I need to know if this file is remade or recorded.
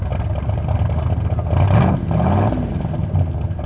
recorded